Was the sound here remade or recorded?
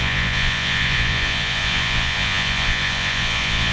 remade